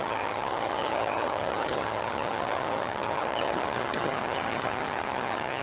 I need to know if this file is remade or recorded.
remade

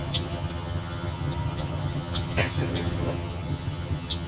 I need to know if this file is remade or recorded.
remade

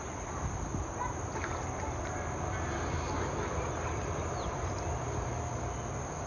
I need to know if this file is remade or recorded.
recorded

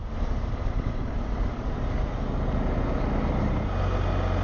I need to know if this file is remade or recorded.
recorded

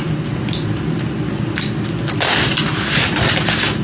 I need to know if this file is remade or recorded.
recorded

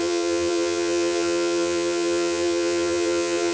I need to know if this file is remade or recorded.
remade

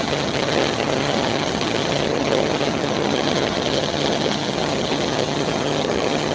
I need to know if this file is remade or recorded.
remade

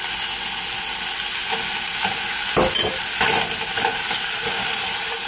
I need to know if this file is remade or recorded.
recorded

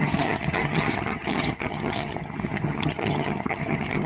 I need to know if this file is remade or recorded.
remade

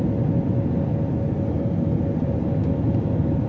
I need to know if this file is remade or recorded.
recorded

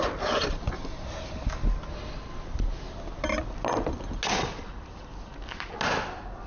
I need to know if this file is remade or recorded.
recorded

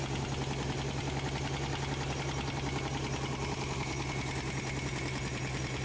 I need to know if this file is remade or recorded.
recorded